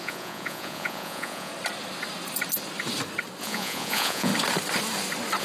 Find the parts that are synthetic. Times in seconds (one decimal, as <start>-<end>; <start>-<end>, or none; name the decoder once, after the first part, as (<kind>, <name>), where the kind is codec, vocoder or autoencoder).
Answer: 0.0-1.5 (vocoder, Vocos); 3.4-4.3